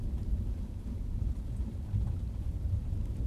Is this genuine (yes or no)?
no